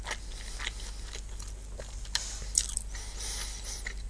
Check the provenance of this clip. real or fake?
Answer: real